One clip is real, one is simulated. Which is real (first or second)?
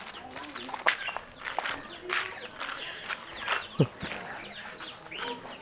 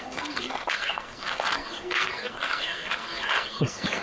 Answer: first